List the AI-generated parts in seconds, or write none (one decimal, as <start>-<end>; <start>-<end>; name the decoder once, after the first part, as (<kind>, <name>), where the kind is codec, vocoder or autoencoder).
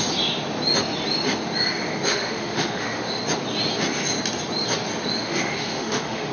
2.1-3.2 (autoencoder, DAC-VAE); 5.0-6.3